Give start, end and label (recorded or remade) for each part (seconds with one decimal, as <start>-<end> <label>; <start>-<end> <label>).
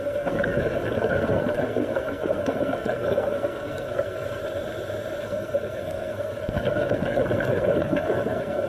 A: 0.0-4.4 remade; 4.4-5.2 recorded; 5.2-8.7 remade